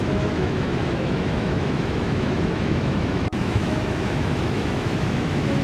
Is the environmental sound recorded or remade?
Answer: remade